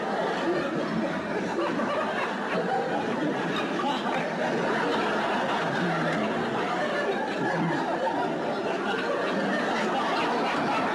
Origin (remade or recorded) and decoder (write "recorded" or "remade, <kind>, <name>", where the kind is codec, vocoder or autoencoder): recorded